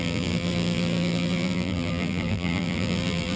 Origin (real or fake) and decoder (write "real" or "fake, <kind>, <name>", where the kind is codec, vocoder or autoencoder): fake, vocoder, BigVGAN v2